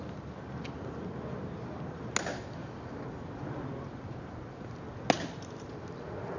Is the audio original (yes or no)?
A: yes